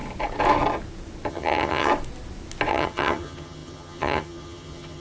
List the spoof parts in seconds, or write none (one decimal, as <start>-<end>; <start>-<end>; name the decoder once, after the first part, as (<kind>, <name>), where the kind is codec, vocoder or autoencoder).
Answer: 1.3-1.9 (vocoder, HiFi-GAN); 2.7-5.0